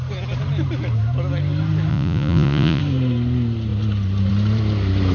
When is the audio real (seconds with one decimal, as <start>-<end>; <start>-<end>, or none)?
0.0-1.9; 2.8-5.1